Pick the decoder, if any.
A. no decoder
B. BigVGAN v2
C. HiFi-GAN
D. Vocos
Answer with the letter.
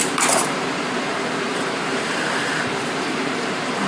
B